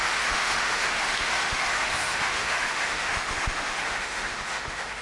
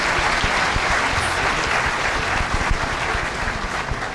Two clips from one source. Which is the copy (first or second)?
first